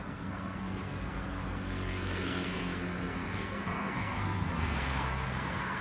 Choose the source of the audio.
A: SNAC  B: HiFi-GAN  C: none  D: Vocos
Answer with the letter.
A